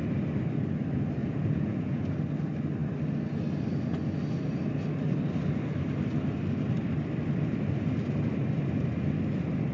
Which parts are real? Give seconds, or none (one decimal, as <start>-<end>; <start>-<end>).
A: 0.0-1.2; 2.0-9.7